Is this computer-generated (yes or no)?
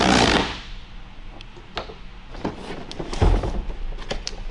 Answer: no